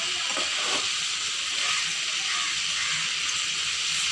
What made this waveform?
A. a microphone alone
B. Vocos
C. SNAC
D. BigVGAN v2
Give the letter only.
A